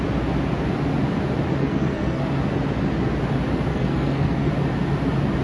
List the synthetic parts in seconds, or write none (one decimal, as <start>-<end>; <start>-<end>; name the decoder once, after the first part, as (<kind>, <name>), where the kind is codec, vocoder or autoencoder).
1.6-2.2 (codec, SNAC); 3.7-4.5